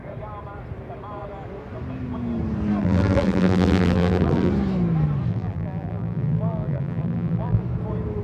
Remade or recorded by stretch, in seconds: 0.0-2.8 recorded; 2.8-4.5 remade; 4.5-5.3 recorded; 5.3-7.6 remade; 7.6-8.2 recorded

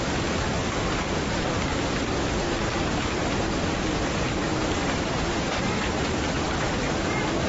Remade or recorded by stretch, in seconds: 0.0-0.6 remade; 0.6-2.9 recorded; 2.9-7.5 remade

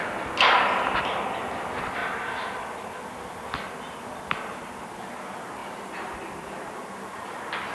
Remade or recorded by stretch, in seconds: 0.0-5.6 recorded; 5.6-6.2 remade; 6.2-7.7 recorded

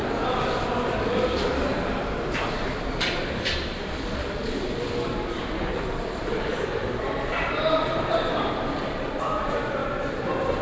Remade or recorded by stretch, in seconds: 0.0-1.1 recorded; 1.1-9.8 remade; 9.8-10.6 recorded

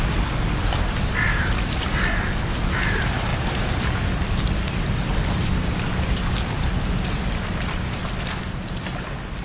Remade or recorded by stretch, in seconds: 0.0-3.3 recorded; 3.3-6.7 remade; 6.7-9.4 recorded